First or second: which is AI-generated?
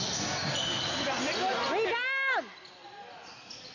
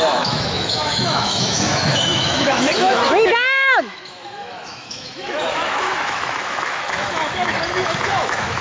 second